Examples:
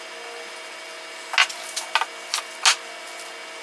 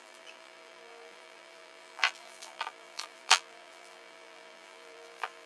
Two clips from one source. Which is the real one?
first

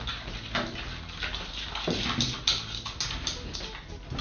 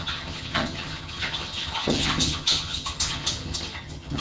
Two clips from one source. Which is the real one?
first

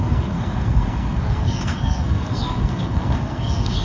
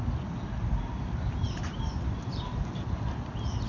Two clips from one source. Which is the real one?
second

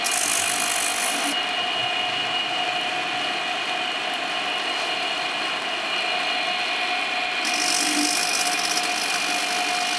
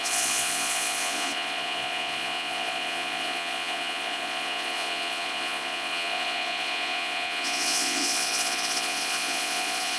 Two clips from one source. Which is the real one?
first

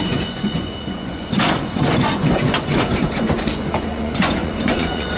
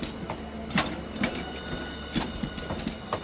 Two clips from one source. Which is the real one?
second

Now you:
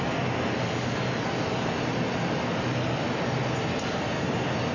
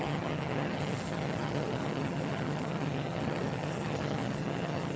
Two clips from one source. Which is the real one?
first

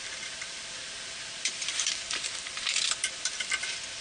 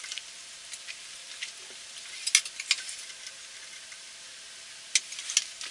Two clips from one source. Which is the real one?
second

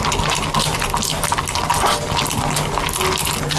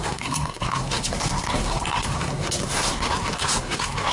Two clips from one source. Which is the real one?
first